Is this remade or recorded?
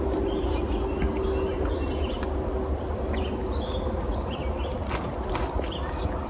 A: recorded